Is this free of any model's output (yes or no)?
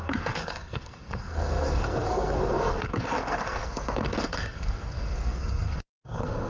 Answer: no